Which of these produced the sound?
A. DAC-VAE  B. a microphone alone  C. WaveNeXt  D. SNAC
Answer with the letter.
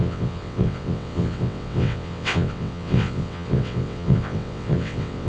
C